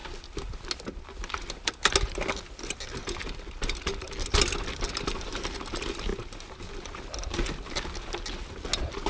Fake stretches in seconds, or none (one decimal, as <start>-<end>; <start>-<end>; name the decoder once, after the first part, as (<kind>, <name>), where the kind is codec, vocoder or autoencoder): none